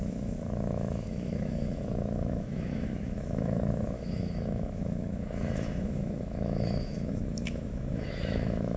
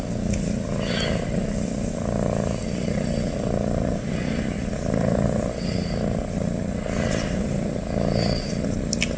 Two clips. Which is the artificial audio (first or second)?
first